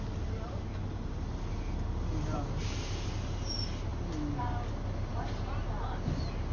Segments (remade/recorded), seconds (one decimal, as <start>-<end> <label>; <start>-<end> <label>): 0.0-6.5 recorded